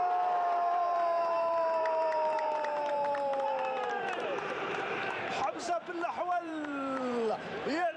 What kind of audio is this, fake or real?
fake